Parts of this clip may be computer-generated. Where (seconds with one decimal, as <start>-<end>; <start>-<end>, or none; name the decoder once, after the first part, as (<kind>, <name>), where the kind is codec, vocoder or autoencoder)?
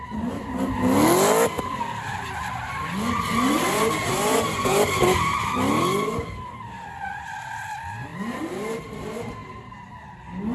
none